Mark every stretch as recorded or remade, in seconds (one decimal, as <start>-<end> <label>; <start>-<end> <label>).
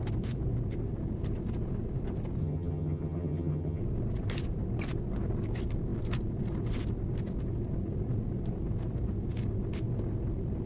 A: 0.0-2.4 recorded; 2.4-3.8 remade; 3.8-10.7 recorded